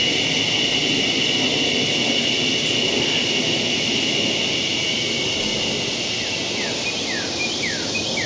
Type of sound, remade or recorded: recorded